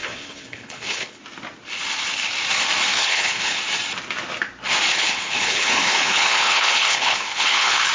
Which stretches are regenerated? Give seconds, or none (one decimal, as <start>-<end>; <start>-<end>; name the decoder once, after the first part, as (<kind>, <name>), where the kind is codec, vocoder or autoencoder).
0.0-1.2 (codec, HILCodec); 2.9-3.6; 4.9-7.9